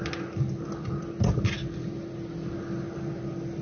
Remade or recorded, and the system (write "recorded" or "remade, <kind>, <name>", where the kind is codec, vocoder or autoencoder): recorded